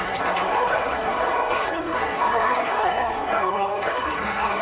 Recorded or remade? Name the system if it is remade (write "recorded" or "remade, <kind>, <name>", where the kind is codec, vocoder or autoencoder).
remade, codec, SNAC